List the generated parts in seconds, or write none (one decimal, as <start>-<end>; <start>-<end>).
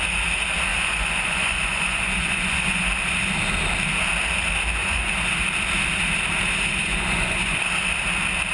0.7-2.8; 4.8-5.3; 6.8-7.6